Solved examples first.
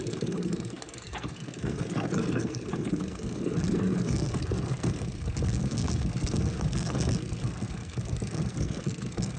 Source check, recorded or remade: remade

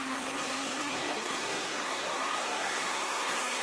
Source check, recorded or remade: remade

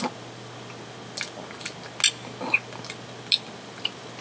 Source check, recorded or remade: recorded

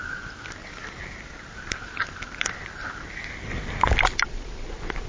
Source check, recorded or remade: recorded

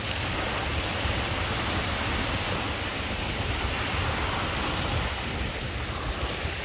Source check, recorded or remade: recorded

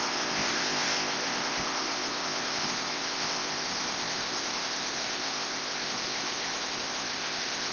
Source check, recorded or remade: remade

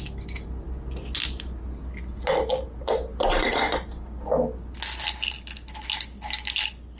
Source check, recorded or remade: recorded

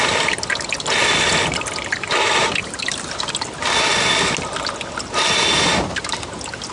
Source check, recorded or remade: recorded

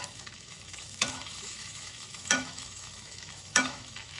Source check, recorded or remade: remade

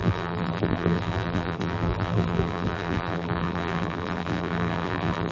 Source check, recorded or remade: remade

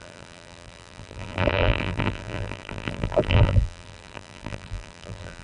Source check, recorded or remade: remade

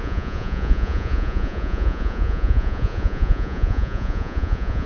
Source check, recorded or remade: remade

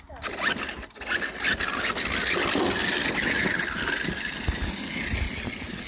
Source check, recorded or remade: recorded